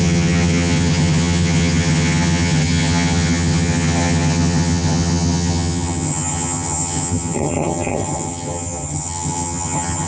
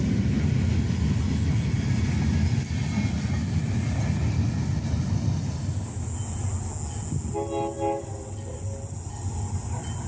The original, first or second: second